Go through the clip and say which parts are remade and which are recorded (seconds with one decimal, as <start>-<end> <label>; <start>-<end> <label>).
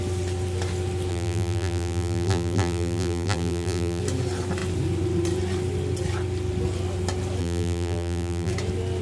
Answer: 0.0-1.1 recorded; 1.1-4.0 remade; 4.0-7.4 recorded; 7.4-8.5 remade; 8.5-9.0 recorded